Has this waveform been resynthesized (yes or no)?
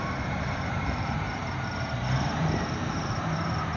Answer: yes